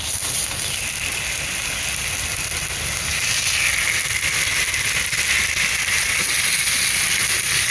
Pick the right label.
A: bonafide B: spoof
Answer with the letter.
A